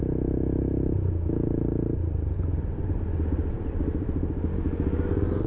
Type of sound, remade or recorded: recorded